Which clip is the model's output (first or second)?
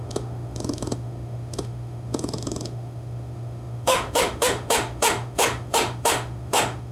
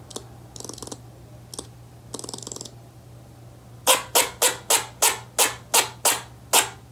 first